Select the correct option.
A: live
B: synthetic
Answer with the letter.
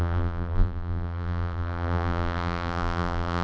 B